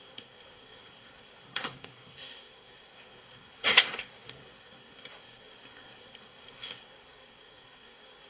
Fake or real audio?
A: fake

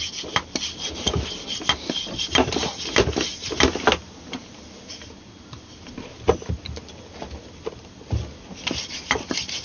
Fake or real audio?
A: real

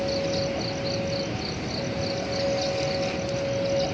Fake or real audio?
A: real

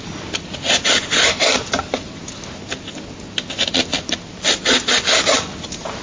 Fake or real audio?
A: real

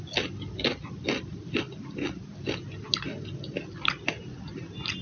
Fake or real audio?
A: real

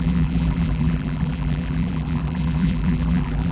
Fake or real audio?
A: fake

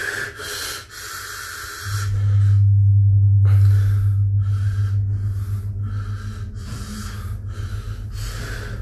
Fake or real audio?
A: real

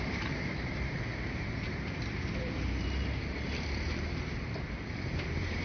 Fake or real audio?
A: fake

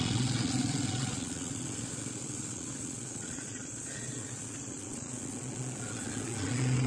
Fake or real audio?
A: fake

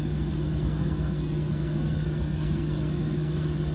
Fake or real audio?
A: fake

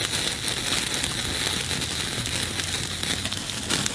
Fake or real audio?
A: real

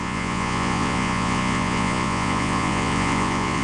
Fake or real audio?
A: fake